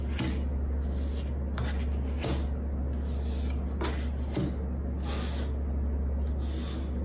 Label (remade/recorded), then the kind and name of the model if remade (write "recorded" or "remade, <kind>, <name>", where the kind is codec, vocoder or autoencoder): recorded